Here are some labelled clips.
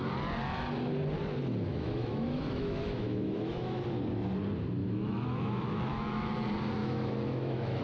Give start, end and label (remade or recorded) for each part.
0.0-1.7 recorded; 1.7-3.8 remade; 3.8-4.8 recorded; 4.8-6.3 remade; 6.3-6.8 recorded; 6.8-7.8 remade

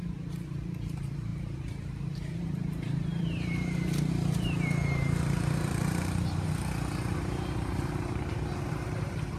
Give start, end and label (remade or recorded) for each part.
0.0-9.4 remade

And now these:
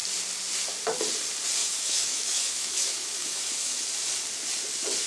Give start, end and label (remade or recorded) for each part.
0.0-1.6 recorded; 1.6-3.8 remade; 3.8-5.1 recorded

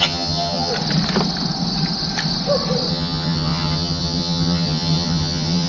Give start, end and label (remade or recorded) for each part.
0.0-0.7 remade; 0.7-2.9 recorded; 2.9-5.7 remade

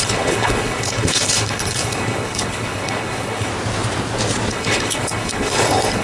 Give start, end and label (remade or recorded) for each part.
0.0-3.5 remade; 3.5-4.5 recorded; 4.5-6.0 remade

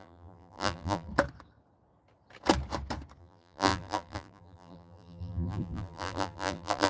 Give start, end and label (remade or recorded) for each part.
0.0-1.1 remade; 1.1-3.2 recorded; 3.2-6.9 remade

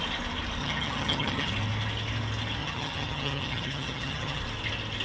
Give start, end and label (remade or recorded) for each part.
0.0-0.6 recorded; 0.6-1.5 remade; 1.5-2.6 recorded; 2.6-4.4 remade; 4.4-5.0 recorded